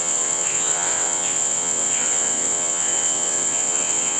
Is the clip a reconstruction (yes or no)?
yes